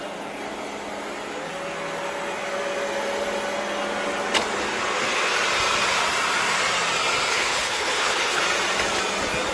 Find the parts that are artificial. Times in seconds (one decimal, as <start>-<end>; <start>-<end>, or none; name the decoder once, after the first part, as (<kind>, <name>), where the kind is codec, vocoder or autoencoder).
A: 7.3-8.4 (codec, HILCodec)